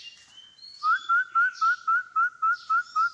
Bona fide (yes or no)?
yes